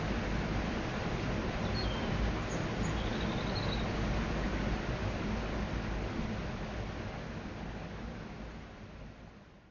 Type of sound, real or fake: real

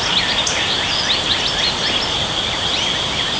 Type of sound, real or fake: real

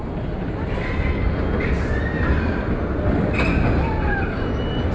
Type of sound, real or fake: real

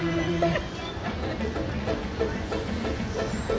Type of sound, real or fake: fake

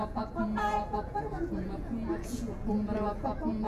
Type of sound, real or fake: fake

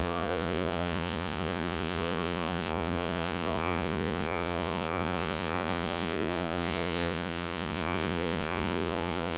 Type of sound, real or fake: fake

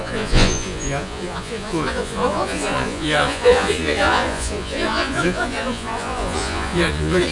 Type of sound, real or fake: fake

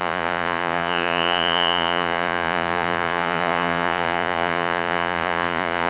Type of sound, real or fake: fake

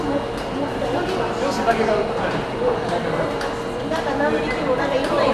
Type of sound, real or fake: real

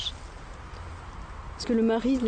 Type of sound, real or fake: real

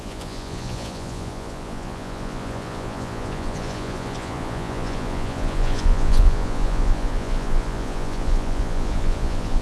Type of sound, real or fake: fake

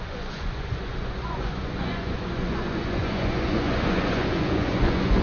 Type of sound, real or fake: fake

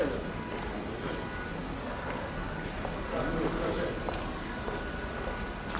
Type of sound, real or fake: real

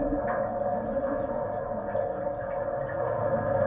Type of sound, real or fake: real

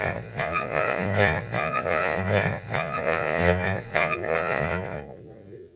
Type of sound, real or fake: fake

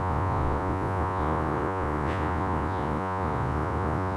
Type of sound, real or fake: fake